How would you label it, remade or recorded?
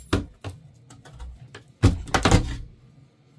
recorded